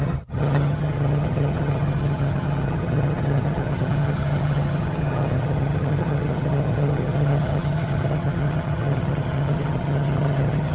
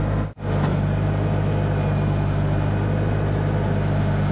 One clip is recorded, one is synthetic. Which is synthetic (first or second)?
first